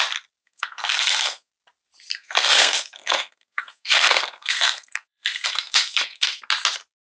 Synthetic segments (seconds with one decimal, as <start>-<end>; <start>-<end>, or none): 0.4-1.5; 2.1-6.4